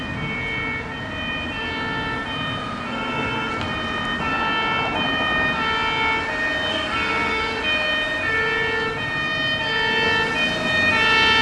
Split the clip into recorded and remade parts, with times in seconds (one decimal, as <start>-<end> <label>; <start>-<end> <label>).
0.0-2.9 recorded; 2.9-3.5 remade; 3.5-6.7 recorded; 6.7-7.4 remade; 7.4-11.4 recorded